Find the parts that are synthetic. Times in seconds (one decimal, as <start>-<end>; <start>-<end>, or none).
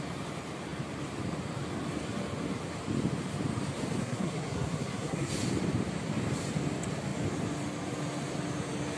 4.0-5.3